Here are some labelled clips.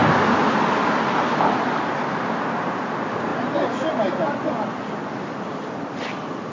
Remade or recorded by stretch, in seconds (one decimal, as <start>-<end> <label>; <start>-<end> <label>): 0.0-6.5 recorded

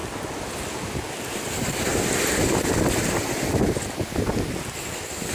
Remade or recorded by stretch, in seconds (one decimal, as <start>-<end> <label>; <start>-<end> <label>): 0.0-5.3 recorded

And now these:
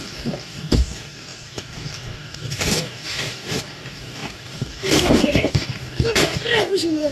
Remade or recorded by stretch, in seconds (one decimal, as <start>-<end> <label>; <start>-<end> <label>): 0.0-7.1 remade

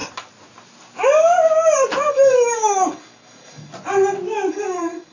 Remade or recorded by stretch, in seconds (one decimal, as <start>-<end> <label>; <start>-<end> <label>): 0.0-2.1 recorded; 2.1-3.7 remade; 3.7-4.5 recorded; 4.5-5.1 remade

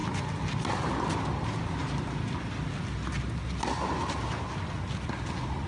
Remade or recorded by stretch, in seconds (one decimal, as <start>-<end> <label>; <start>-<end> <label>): 0.0-5.7 recorded

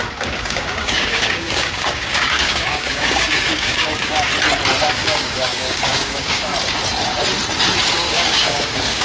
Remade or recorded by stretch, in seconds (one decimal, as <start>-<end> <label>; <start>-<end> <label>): 0.0-4.3 remade; 4.3-4.9 recorded; 4.9-6.5 remade; 6.5-7.9 recorded; 7.9-9.0 remade